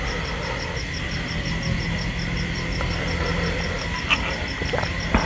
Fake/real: real